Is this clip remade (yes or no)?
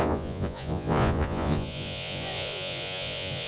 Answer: yes